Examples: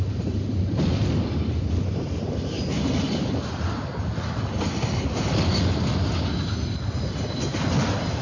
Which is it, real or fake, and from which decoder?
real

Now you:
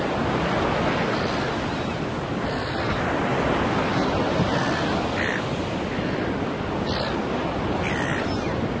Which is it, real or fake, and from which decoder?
real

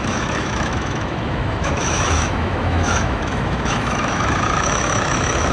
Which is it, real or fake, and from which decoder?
fake, autoencoder, DAC-VAE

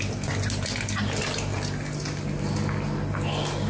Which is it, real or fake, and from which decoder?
real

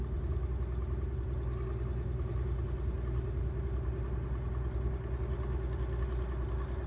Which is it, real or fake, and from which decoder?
real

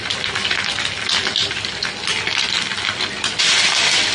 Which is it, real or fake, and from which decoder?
real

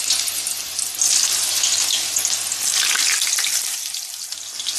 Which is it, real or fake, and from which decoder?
real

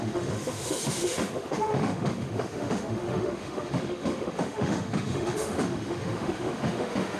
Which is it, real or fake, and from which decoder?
fake, autoencoder, DAC-VAE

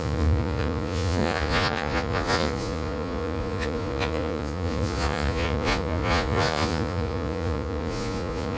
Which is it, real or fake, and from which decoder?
fake, vocoder, Vocos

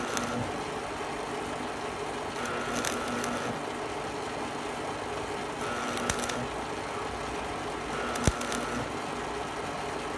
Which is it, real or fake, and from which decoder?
real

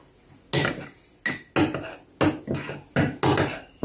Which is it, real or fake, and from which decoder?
real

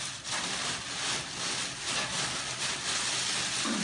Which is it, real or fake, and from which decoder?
real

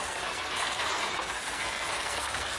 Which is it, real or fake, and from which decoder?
fake, codec, SNAC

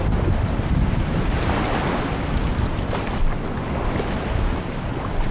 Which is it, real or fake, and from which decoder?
real